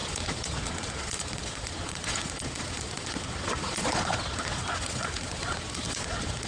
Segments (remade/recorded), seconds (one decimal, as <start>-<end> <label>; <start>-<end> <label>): 0.0-6.5 remade

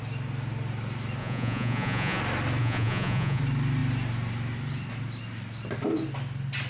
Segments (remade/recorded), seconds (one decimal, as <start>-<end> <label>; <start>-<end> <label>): 0.0-1.2 recorded; 1.2-2.2 remade; 2.2-2.6 recorded; 2.6-3.4 remade; 3.4-6.7 recorded